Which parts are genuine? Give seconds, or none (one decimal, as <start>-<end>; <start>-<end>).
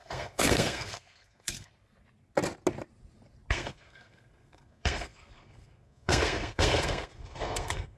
1.7-3.5